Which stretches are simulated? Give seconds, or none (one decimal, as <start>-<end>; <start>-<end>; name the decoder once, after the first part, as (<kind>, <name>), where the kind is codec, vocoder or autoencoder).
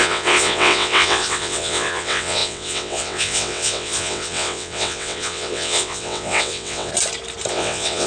0.0-6.9 (vocoder, WaveNeXt); 7.5-8.1